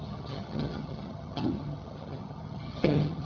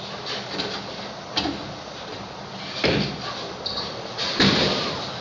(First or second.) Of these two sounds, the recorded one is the second